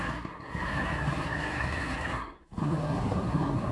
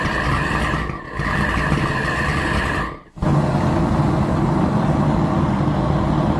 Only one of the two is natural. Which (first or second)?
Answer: second